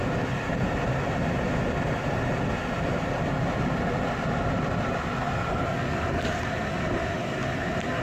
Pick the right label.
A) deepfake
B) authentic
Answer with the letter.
B